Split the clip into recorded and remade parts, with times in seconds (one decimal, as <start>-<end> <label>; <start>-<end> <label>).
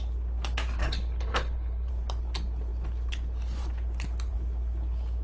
0.0-0.8 recorded; 0.8-1.9 remade; 1.9-5.2 recorded